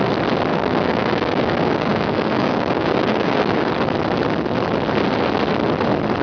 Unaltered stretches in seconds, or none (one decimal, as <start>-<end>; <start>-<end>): 0.0-0.5; 3.7-6.2